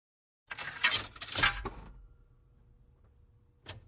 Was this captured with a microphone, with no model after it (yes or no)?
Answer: yes